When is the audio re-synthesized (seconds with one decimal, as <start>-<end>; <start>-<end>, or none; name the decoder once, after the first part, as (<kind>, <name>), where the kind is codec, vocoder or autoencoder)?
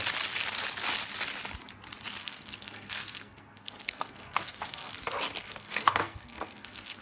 2.2-4.9 (codec, SNAC); 5.4-7.0